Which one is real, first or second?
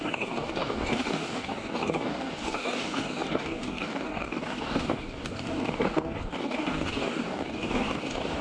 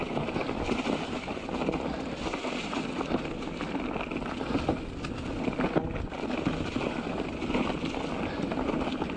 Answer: second